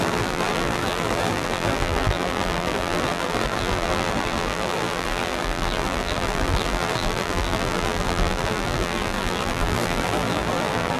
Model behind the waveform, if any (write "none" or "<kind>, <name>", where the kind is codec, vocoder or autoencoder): vocoder, BigVGAN v2